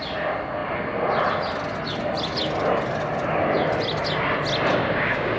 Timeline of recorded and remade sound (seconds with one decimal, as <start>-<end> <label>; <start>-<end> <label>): 0.0-4.7 recorded; 4.7-5.4 remade